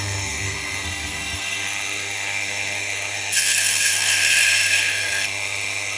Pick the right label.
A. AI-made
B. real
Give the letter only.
A